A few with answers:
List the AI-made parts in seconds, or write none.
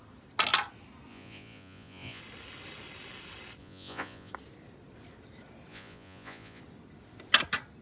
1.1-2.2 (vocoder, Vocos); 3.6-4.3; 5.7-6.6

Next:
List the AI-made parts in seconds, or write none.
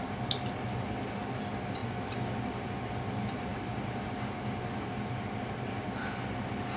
none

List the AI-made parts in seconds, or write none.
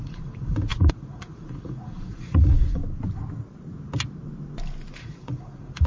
0.0-2.8 (vocoder, Vocos); 5.0-5.9